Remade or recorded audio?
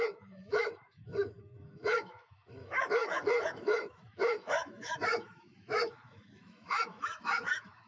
remade